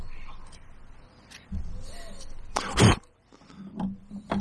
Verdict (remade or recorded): recorded